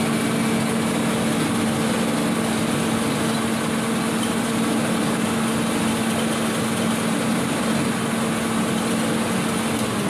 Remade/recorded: recorded